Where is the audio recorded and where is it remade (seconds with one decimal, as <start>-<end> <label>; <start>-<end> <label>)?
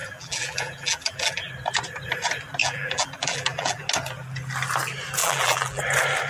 0.0-1.5 remade; 1.5-2.6 recorded; 2.6-3.8 remade; 3.8-5.2 recorded; 5.2-5.8 remade; 5.8-6.3 recorded